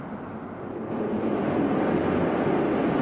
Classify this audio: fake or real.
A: real